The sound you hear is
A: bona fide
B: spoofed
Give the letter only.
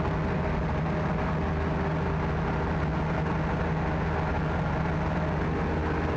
A